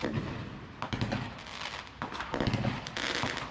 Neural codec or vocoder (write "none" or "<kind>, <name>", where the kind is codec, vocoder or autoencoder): none